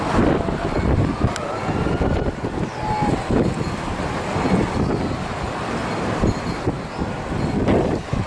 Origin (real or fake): real